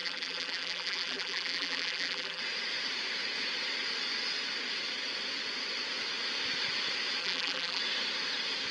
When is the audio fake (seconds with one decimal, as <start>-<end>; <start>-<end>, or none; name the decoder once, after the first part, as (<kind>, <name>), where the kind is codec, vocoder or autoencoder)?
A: 0.0-2.4 (vocoder, BigVGAN v2); 7.2-7.8